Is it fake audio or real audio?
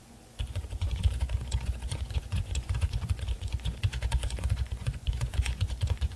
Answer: fake